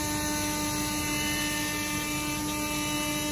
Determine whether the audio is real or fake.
real